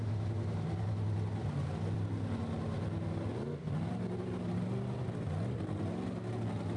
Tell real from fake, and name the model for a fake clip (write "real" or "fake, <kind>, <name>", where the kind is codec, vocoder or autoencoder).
real